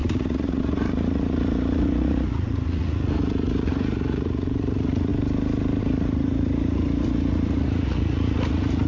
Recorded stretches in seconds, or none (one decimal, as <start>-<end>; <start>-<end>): 5.1-5.8